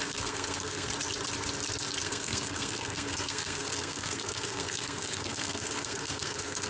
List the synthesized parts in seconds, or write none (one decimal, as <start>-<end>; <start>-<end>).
0.0-0.9; 2.0-6.7